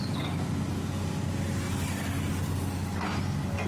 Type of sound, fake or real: real